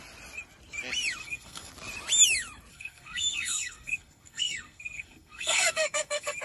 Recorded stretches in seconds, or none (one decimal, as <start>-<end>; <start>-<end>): 0.0-1.2; 1.7-2.7